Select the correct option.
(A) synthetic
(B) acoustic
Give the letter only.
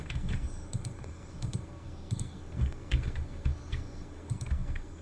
A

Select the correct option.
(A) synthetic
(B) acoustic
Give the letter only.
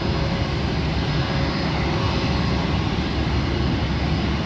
B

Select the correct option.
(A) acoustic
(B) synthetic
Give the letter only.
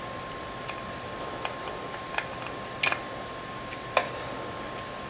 A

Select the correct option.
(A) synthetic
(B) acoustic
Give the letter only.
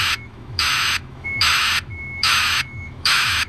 A